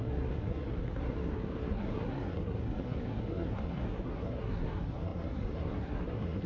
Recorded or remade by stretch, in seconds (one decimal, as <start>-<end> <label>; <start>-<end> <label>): 0.0-6.5 remade